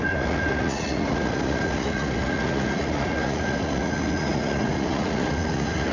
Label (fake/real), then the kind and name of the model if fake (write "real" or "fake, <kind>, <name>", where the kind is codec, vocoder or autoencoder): fake, vocoder, Vocos